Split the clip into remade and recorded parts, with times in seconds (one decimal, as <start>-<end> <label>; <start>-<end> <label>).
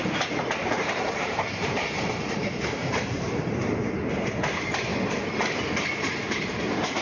0.0-4.9 remade; 4.9-6.3 recorded; 6.3-7.0 remade